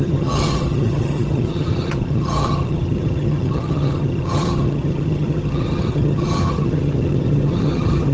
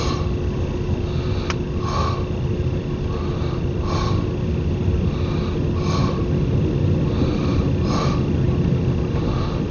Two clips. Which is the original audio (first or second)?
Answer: second